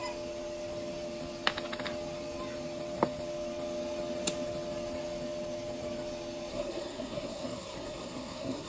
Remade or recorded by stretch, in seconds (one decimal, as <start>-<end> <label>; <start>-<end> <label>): 0.0-6.5 recorded; 6.5-8.7 remade